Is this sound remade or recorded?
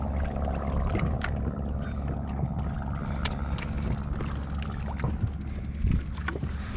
recorded